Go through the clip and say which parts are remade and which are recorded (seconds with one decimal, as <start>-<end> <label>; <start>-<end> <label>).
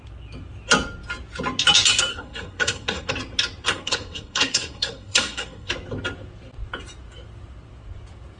0.0-2.1 recorded; 2.1-3.1 remade; 3.1-3.7 recorded; 3.7-5.7 remade; 5.7-8.4 recorded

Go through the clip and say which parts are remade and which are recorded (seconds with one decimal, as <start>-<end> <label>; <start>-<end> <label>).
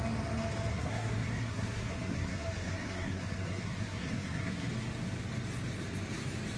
0.0-0.7 recorded; 0.7-4.7 remade; 4.7-6.6 recorded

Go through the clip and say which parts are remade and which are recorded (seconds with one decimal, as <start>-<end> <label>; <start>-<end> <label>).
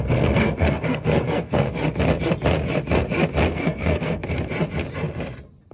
0.0-1.7 remade; 1.7-3.5 recorded; 3.5-4.2 remade; 4.2-5.7 recorded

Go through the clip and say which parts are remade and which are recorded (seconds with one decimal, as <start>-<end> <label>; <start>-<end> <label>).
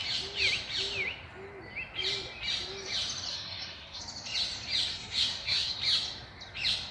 0.0-3.3 recorded; 3.3-4.0 remade; 4.0-4.9 recorded; 4.9-5.7 remade; 5.7-6.9 recorded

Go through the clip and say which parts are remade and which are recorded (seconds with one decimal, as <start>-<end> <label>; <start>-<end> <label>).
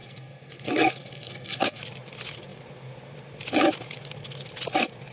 0.0-1.8 remade; 1.8-5.1 recorded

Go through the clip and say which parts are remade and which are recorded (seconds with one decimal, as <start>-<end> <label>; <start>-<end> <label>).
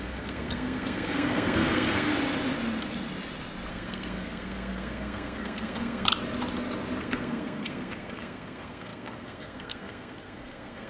0.0-2.1 remade; 2.1-3.7 recorded; 3.7-6.1 remade; 6.1-7.0 recorded; 7.0-10.9 remade